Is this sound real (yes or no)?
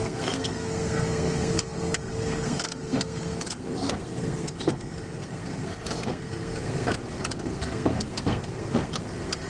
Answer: no